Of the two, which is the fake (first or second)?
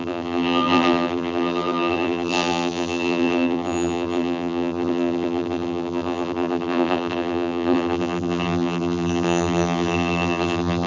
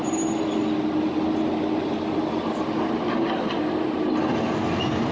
first